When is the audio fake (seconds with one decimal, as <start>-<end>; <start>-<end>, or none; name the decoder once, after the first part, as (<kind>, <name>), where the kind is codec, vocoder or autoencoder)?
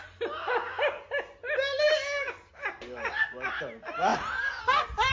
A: none